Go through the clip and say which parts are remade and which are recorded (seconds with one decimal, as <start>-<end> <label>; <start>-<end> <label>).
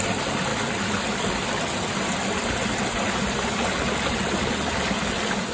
0.0-5.5 recorded